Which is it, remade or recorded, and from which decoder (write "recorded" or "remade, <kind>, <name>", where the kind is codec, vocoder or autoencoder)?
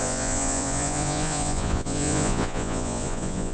remade, vocoder, Vocos